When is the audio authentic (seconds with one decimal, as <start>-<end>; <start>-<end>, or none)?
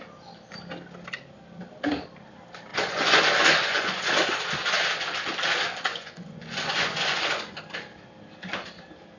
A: 0.0-2.7; 3.2-3.6; 4.1-5.9; 7.6-9.2